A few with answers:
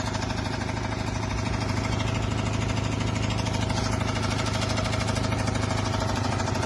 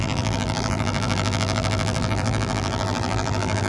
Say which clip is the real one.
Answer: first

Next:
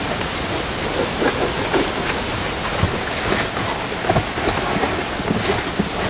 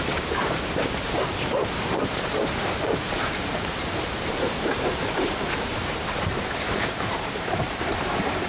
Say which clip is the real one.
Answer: first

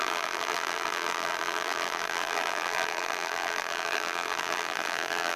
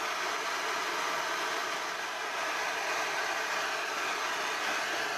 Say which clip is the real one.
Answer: second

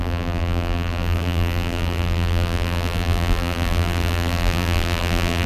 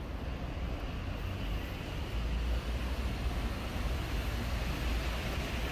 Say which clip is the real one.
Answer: second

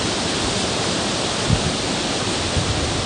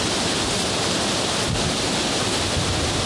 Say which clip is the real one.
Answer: second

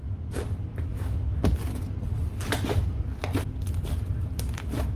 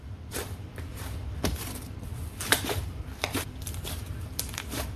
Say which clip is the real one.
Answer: first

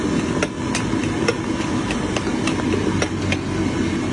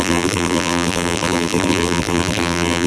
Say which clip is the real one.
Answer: first